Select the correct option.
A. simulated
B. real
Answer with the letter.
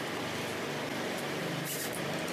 B